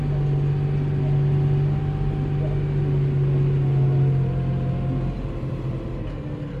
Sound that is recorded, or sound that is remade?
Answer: recorded